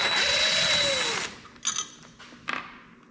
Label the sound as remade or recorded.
recorded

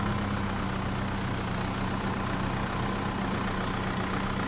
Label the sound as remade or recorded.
recorded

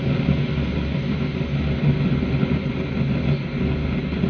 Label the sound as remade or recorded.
recorded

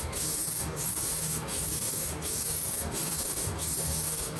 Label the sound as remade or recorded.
remade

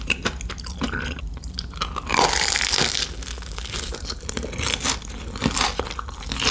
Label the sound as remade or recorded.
recorded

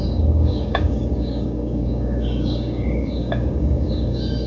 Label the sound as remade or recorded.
remade